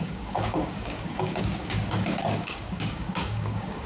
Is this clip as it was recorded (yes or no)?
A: no